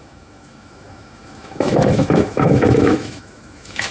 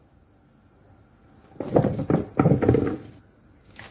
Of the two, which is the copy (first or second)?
first